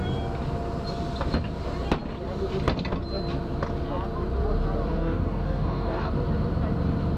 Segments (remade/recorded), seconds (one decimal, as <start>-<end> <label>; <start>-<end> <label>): 0.0-4.9 recorded; 4.9-6.1 remade; 6.1-7.2 recorded